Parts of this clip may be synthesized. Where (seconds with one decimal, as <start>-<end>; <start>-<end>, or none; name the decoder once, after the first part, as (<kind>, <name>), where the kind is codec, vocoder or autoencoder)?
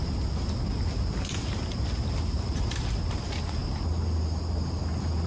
none